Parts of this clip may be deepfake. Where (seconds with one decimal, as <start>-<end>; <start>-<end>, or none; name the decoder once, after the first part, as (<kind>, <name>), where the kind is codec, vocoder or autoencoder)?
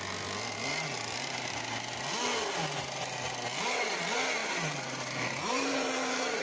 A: 4.4-5.9 (vocoder, BigVGAN v2)